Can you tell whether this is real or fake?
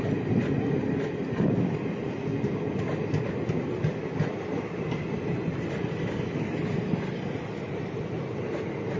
real